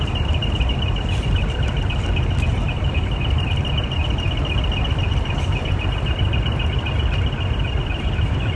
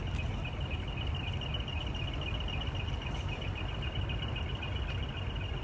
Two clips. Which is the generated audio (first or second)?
first